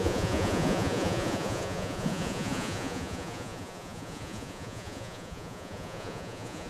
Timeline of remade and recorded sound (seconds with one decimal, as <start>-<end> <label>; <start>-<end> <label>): 0.0-6.7 remade